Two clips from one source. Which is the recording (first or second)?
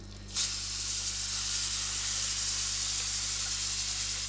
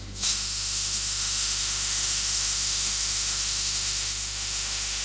first